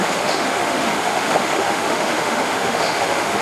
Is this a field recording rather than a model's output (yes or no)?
no